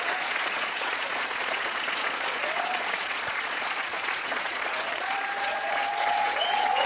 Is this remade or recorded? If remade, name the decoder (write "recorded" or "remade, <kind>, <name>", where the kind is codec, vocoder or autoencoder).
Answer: remade, vocoder, Vocos